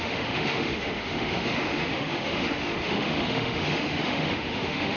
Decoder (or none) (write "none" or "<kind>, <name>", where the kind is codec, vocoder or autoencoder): autoencoder, DAC-VAE